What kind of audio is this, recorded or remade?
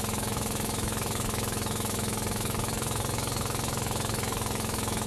remade